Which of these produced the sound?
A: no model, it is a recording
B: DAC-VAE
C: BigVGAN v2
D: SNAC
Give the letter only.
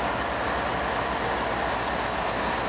A